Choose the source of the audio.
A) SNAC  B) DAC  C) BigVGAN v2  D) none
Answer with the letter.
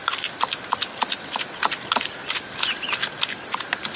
C